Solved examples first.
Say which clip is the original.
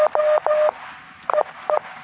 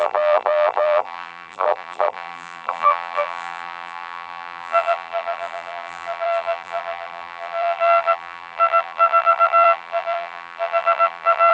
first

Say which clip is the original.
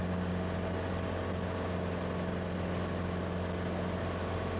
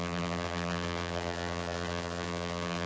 first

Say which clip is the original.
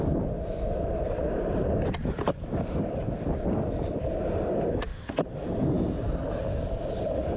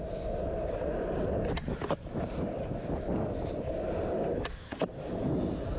second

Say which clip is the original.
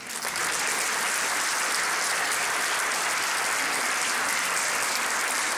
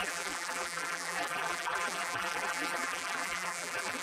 first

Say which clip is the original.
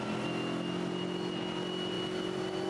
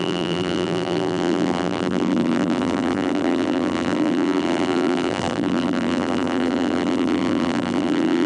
first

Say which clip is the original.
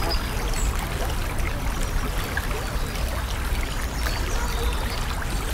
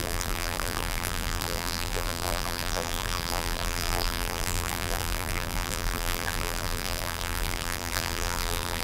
first